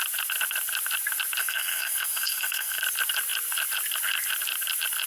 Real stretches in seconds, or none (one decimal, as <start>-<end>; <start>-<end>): 0.0-1.4; 2.8-5.1

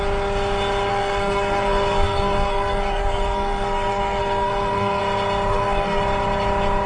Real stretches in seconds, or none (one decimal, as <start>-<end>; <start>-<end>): 0.0-0.9; 5.0-5.5; 6.0-6.9

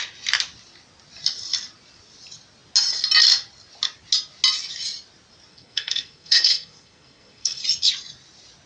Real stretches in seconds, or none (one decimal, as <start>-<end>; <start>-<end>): 0.0-5.5; 7.6-8.7